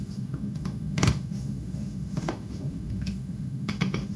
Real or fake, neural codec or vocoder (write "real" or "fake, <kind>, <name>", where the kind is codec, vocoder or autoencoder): fake, autoencoder, DAC-VAE